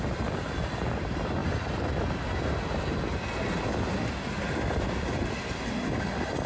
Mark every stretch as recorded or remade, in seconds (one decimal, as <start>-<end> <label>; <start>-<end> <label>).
0.0-6.5 recorded